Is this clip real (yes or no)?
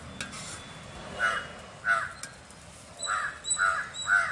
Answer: yes